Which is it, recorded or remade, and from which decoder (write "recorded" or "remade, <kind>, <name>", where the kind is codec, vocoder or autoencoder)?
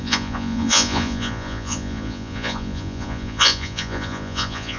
remade, vocoder, Vocos